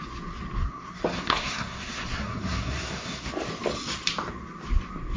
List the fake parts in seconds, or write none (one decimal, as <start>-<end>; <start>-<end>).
0.6-3.3